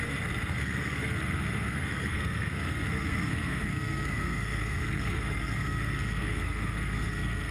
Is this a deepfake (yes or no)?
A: yes